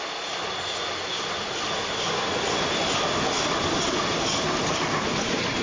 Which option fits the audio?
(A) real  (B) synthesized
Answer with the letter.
A